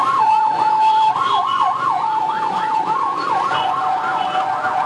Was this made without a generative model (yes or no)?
no